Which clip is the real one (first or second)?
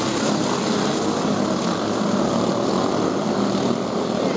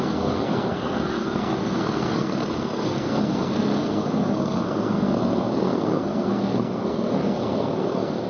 first